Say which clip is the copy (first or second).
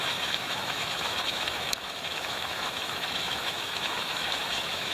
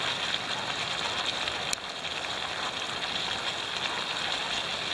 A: first